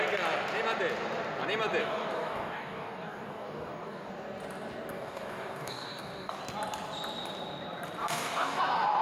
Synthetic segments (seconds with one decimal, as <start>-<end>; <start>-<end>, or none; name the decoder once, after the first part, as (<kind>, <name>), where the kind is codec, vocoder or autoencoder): 1.8-4.1 (codec, DAC); 4.9-6.4; 8.0-8.6